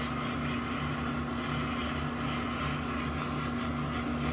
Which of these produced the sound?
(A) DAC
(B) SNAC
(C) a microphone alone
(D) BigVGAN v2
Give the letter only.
C